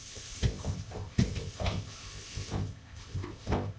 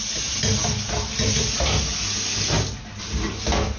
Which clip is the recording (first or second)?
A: second